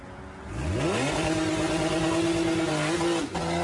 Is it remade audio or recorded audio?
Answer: recorded